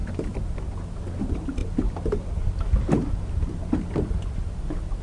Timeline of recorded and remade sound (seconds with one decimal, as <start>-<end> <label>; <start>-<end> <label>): 0.0-5.0 recorded